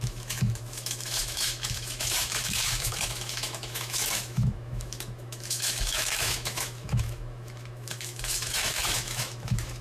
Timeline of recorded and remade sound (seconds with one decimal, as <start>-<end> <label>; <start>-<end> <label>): 0.0-9.8 remade